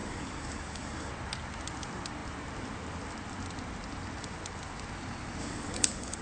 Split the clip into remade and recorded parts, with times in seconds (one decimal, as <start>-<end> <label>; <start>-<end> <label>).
0.0-1.1 remade; 1.1-5.4 recorded; 5.4-6.2 remade